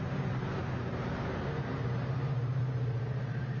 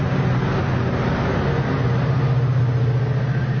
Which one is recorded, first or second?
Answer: second